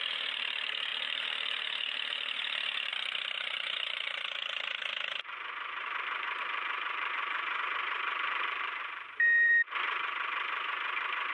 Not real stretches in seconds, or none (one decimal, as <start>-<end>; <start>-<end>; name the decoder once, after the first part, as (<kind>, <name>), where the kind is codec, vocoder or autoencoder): 0.0-11.3 (vocoder, BigVGAN v2)